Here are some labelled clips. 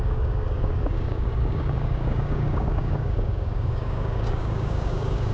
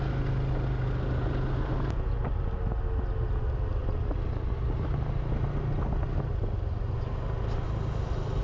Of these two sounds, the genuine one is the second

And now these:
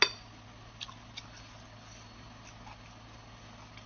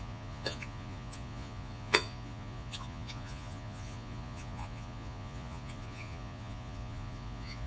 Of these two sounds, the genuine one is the first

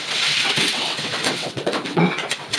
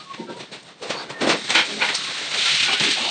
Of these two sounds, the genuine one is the second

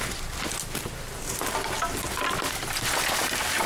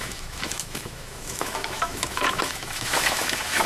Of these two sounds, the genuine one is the first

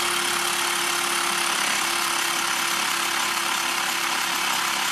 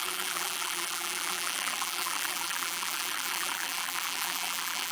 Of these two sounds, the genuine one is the first